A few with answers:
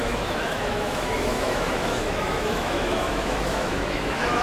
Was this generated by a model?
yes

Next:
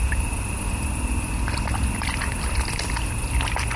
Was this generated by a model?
no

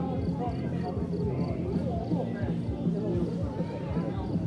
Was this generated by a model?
no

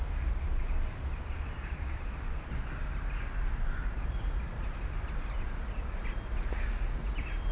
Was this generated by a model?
no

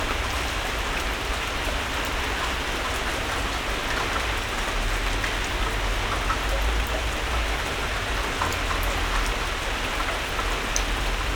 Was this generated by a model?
no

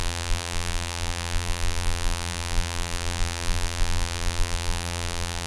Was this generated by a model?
yes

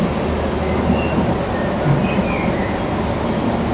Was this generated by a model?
no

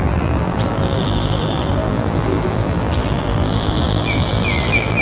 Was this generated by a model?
yes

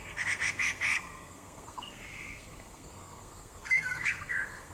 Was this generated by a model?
yes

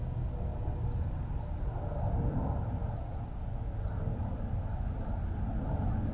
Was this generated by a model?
no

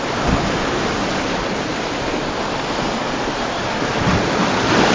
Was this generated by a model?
yes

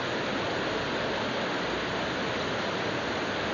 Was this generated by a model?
no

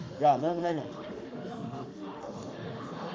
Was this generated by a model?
yes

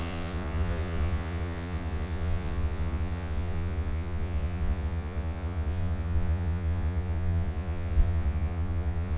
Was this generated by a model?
yes